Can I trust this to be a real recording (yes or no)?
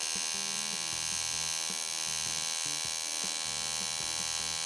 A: yes